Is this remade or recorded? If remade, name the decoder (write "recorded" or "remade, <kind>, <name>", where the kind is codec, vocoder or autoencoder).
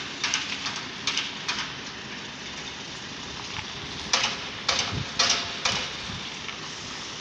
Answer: recorded